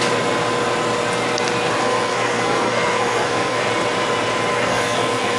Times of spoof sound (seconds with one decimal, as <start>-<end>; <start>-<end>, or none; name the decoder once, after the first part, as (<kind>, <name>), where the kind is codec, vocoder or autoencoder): 1.8-3.7 (codec, SNAC); 4.5-5.4